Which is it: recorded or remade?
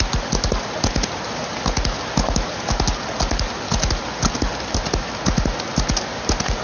recorded